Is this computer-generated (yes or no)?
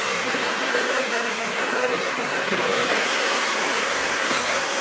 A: yes